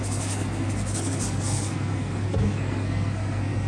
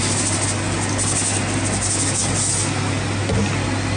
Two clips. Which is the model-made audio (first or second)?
first